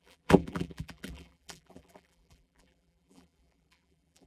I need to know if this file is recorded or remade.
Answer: remade